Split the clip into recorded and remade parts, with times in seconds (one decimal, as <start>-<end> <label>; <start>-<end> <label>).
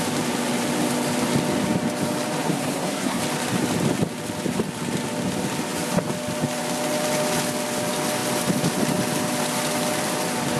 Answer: 0.0-2.4 recorded; 2.4-3.2 remade; 3.2-10.6 recorded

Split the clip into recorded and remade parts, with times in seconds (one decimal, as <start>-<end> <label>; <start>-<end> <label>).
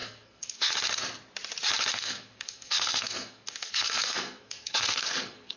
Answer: 0.0-0.7 remade; 0.7-1.9 recorded; 1.9-5.6 remade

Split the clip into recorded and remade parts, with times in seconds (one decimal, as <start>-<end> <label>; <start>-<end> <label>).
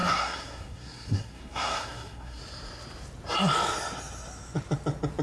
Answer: 0.0-2.4 remade; 2.4-5.2 recorded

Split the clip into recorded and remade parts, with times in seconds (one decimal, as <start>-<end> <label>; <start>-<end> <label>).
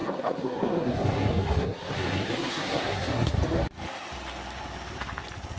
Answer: 0.0-3.4 remade; 3.4-5.6 recorded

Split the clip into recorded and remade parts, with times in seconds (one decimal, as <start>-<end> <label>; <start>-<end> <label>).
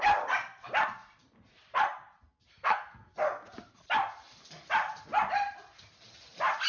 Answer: 0.0-2.5 recorded; 2.5-3.1 remade; 3.1-6.7 recorded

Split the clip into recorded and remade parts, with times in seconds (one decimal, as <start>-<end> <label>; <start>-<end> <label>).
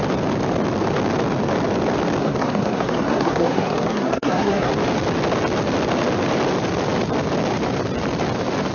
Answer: 0.0-2.2 recorded; 2.2-4.7 remade; 4.7-8.7 recorded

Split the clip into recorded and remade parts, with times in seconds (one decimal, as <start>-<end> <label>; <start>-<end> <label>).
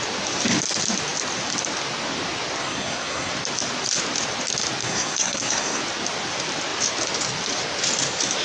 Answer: 0.0-2.6 recorded; 2.6-3.3 remade; 3.3-4.8 recorded; 4.8-5.8 remade; 5.8-8.4 recorded